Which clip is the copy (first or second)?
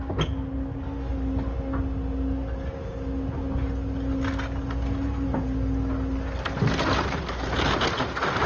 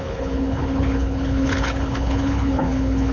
second